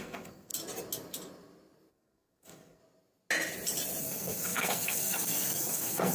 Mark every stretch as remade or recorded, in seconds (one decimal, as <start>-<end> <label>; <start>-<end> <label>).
0.0-0.5 remade; 0.5-1.9 recorded; 1.9-2.8 remade; 2.8-4.0 recorded; 4.0-6.1 remade